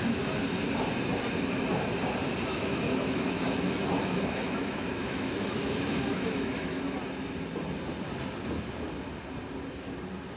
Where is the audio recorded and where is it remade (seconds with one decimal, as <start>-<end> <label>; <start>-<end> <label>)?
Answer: 0.0-2.5 recorded; 2.5-6.8 remade; 6.8-10.4 recorded